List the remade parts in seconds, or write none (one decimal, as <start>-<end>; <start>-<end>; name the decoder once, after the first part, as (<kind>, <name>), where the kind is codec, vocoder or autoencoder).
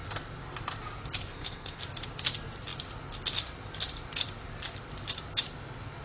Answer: 1.3-1.8 (codec, SNAC)